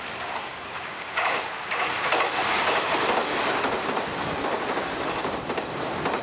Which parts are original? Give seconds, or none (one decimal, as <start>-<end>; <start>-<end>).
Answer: 0.0-0.5; 1.9-6.2